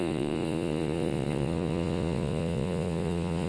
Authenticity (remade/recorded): remade